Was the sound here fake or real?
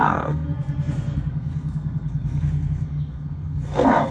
fake